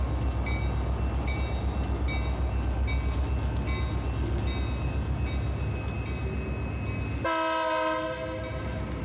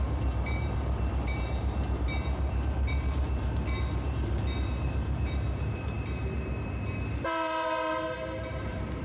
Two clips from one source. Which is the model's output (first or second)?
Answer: second